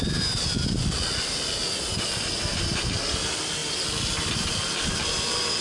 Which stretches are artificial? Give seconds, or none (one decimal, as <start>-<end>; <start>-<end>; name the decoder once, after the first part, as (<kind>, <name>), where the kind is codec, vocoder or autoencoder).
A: none